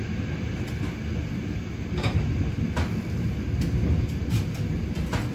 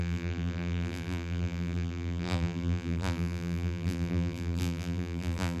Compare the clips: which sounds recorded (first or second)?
first